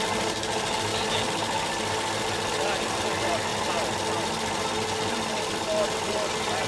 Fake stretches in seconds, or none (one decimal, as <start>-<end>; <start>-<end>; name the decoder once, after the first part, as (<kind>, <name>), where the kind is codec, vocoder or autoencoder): none